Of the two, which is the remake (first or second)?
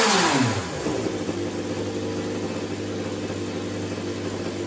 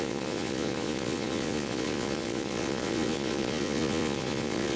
second